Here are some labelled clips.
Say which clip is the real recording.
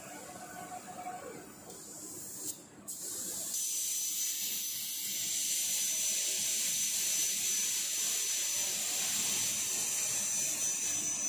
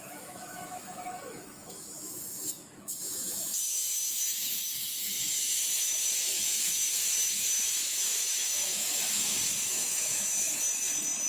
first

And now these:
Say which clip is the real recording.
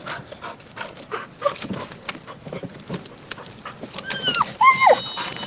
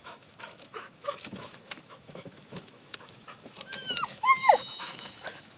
first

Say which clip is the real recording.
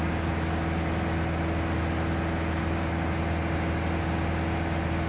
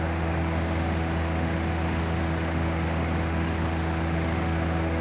first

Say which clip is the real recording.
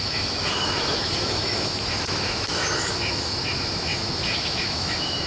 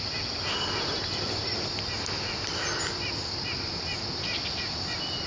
second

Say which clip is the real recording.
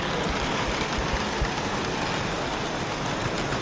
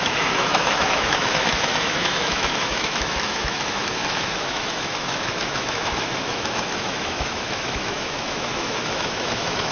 first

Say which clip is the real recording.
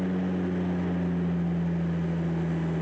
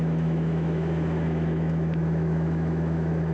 first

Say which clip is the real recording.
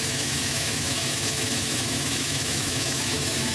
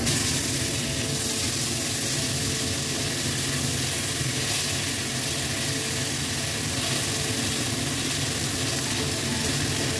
second